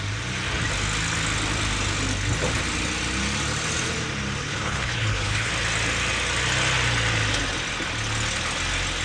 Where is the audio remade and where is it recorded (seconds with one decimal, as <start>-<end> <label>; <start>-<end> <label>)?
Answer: 0.0-4.4 recorded; 4.4-5.5 remade; 5.5-9.0 recorded